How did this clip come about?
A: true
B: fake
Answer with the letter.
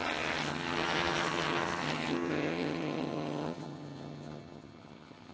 B